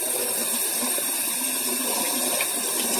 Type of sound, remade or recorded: recorded